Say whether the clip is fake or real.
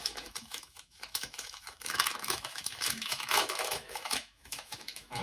fake